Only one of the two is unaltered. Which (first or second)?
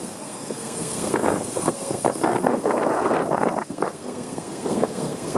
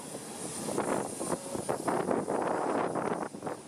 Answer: second